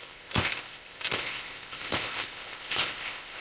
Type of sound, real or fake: fake